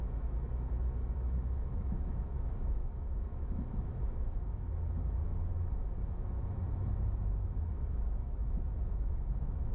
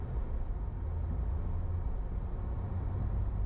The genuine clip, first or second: second